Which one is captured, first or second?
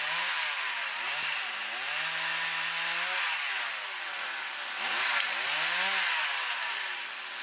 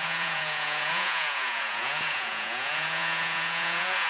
first